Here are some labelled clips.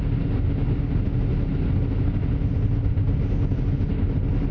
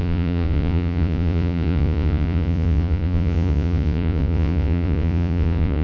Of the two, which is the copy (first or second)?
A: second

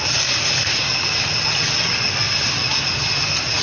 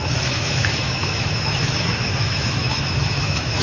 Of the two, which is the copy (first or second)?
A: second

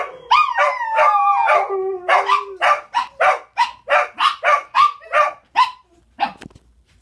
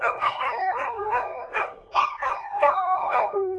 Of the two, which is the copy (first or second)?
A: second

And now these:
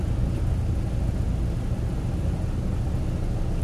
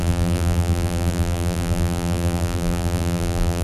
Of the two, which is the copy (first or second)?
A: second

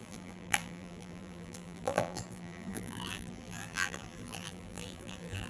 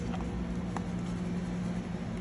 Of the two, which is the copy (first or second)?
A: first